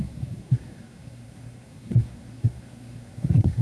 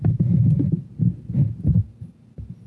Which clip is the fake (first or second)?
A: first